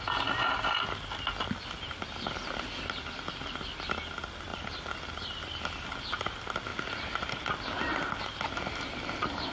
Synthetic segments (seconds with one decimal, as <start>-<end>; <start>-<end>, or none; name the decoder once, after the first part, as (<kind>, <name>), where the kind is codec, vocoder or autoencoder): none